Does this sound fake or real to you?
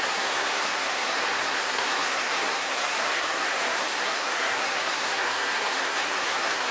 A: fake